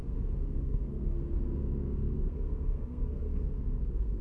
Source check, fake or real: fake